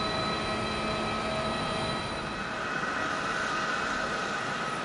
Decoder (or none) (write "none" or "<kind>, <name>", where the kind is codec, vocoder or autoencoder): none